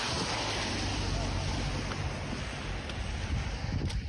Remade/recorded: recorded